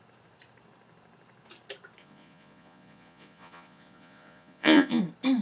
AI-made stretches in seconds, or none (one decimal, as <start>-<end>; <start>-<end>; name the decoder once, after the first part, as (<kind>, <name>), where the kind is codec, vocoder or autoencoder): 2.0-5.0 (vocoder, Vocos)